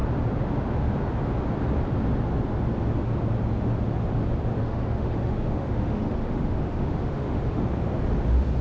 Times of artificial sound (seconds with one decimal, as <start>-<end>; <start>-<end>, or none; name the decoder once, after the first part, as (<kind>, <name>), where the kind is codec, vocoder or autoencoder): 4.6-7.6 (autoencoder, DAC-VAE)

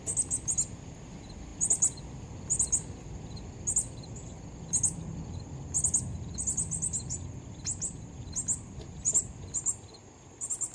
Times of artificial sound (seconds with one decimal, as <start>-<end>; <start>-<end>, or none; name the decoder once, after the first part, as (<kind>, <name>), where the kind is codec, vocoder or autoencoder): none

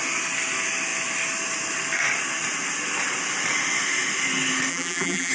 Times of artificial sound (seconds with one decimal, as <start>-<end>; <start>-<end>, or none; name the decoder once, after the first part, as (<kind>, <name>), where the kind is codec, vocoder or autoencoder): 4.7-5.3 (vocoder, BigVGAN v2)

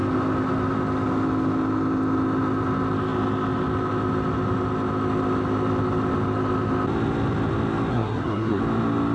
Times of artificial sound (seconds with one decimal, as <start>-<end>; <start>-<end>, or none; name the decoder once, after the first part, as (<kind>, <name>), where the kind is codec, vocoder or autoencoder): 7.9-8.6 (codec, SNAC)

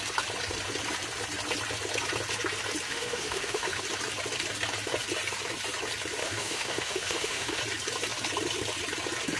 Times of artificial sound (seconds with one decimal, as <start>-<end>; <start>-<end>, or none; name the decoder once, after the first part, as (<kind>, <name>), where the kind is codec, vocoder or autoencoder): 2.9-3.8 (autoencoder, DAC-VAE); 6.2-7.6

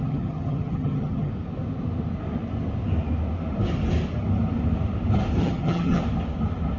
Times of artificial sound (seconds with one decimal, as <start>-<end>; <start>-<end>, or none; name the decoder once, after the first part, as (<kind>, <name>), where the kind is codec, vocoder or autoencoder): 0.0-1.3 (vocoder, HiFi-GAN); 5.4-6.0

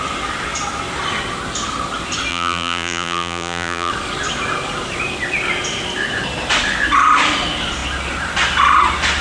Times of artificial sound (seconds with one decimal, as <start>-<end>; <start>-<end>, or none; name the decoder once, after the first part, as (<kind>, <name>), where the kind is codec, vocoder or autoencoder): 2.3-3.9 (vocoder, BigVGAN v2)